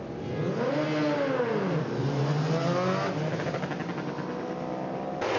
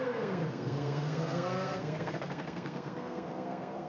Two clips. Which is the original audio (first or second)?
first